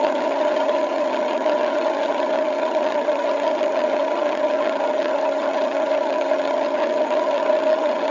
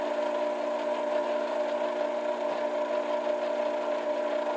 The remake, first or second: first